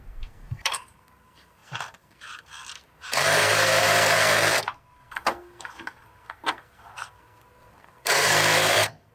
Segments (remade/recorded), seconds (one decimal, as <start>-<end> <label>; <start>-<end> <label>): 0.0-9.1 remade